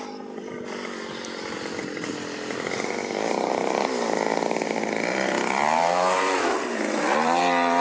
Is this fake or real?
fake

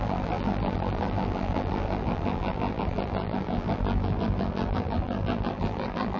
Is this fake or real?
fake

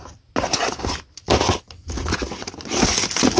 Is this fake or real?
real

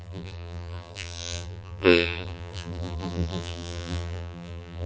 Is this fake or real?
fake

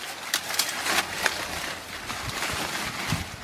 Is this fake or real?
real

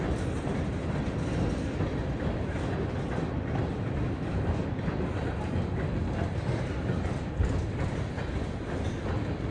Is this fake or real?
real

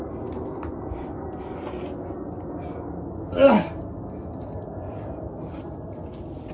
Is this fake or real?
real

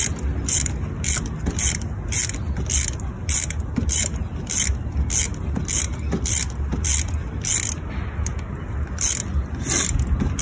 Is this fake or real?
real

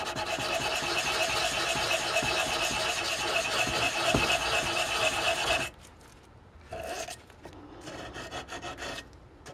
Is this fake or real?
real